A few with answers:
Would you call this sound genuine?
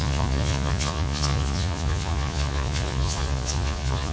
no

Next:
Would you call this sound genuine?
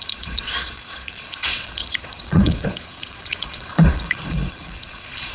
no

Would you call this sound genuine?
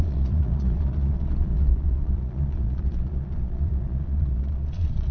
no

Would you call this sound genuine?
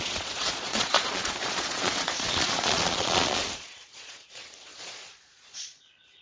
no